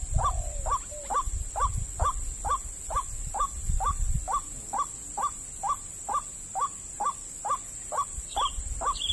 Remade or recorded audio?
recorded